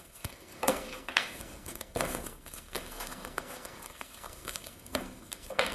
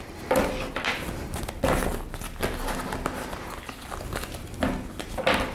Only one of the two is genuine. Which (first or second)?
second